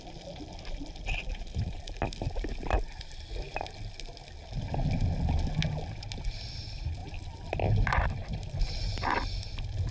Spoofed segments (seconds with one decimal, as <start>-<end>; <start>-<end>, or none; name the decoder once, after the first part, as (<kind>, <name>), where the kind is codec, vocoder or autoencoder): none